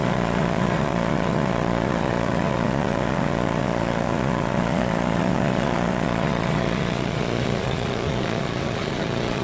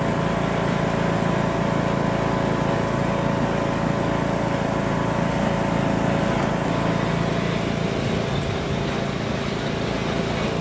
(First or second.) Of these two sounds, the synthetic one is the first